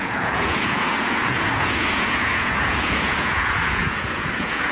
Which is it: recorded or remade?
remade